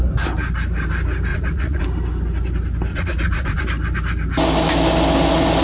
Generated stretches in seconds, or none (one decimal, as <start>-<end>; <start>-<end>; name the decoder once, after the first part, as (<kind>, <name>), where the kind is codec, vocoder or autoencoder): 1.3-1.8 (vocoder, Vocos); 2.9-3.6